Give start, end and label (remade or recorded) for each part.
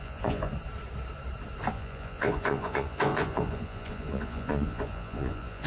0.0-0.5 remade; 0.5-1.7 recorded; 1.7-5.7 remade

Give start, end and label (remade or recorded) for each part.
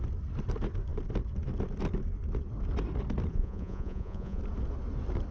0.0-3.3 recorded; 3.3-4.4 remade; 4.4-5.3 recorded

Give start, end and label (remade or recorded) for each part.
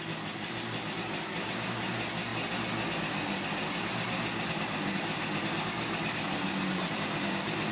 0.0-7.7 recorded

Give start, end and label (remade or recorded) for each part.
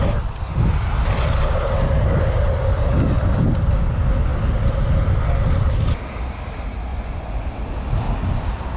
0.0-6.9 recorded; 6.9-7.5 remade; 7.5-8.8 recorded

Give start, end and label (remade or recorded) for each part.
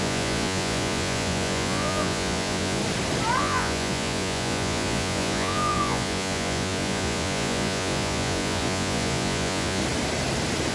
0.0-2.8 remade; 2.8-3.4 recorded; 3.4-9.8 remade; 9.8-10.7 recorded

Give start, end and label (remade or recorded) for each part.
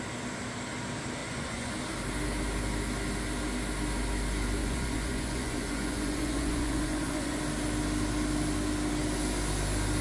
0.0-1.2 recorded; 1.2-1.7 remade; 1.7-4.6 recorded; 4.6-7.4 remade; 7.4-10.0 recorded